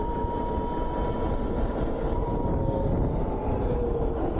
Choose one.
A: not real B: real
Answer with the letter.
B